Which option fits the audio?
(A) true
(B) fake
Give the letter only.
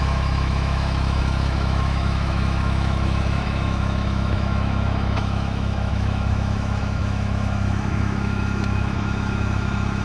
B